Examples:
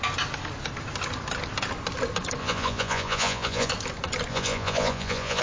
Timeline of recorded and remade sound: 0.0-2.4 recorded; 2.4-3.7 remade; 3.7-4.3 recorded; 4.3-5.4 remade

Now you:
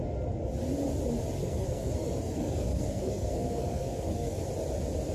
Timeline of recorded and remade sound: 0.0-1.4 recorded; 1.4-4.5 remade; 4.5-5.1 recorded

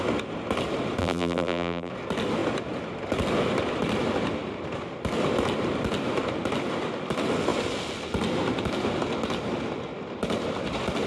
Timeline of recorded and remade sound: 0.0-1.0 recorded; 1.0-1.9 remade; 1.9-11.1 recorded

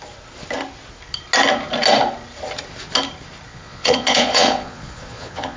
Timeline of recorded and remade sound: 0.0-3.5 recorded; 3.5-5.6 remade

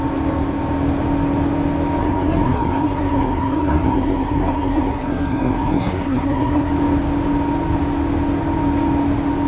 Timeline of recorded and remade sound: 0.0-2.0 recorded; 2.0-6.7 remade; 6.7-9.5 recorded

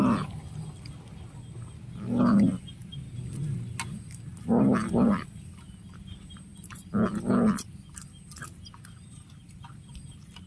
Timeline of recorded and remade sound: 0.0-10.5 recorded